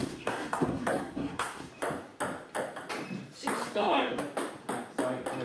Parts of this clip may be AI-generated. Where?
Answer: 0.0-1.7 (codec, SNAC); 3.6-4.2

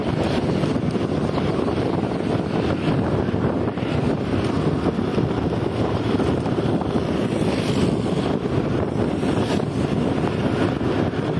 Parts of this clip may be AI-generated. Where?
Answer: none

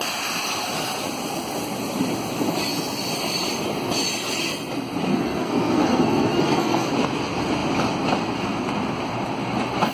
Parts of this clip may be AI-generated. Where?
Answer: 5.1-6.9 (codec, SNAC)

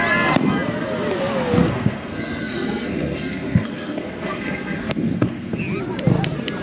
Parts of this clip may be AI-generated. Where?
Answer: 1.6-5.6 (codec, SNAC)

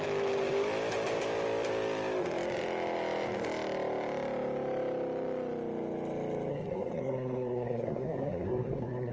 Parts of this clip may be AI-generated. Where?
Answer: 6.5-9.1 (codec, SNAC)